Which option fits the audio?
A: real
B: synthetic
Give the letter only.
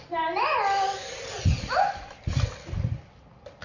A